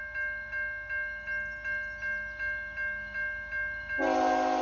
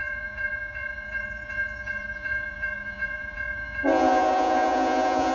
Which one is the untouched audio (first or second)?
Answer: first